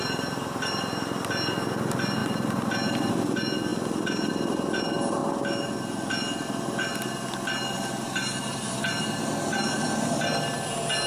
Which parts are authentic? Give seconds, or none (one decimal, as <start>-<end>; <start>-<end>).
0.0-11.1